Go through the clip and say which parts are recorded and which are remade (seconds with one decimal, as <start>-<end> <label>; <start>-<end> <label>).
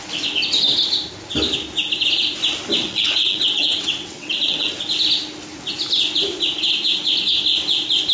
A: 0.0-2.8 recorded; 2.8-4.7 remade; 4.7-8.1 recorded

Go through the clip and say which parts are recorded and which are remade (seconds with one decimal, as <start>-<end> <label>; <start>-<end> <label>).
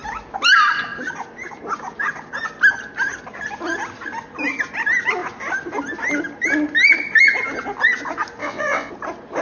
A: 0.0-8.4 recorded; 8.4-8.9 remade; 8.9-9.4 recorded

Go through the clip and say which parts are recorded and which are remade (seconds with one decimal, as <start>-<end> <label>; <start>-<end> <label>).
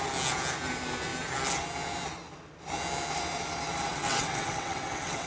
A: 0.0-3.9 recorded; 3.9-5.3 remade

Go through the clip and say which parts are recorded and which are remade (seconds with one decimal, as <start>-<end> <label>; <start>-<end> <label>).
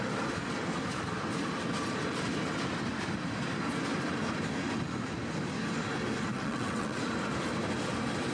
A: 0.0-6.3 recorded; 6.3-7.0 remade; 7.0-8.3 recorded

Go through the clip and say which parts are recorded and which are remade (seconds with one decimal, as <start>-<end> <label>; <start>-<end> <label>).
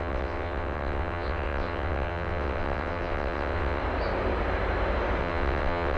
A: 0.0-3.8 remade; 3.8-5.2 recorded; 5.2-6.0 remade